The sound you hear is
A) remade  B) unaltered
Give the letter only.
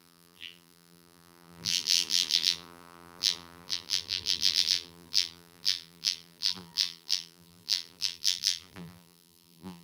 A